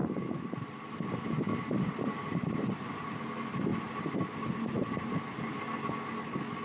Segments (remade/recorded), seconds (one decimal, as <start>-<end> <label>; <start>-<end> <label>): 0.0-0.9 remade; 0.9-1.5 recorded; 1.5-3.2 remade; 3.2-3.7 recorded; 3.7-5.2 remade; 5.2-6.6 recorded